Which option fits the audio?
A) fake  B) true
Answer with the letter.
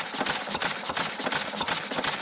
B